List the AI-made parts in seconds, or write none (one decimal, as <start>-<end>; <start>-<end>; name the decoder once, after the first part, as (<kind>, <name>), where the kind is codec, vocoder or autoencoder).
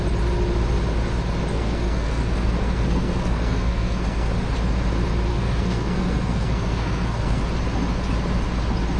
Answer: 1.5-4.3 (codec, SNAC); 5.3-7.4